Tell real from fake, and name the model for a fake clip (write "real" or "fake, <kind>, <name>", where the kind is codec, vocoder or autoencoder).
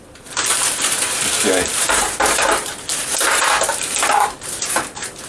fake, vocoder, BigVGAN v2